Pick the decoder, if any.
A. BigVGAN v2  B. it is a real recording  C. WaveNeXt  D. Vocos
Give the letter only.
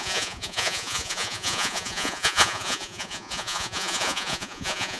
D